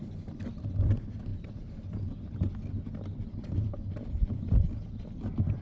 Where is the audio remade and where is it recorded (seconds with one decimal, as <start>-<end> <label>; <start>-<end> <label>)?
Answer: 0.0-5.6 recorded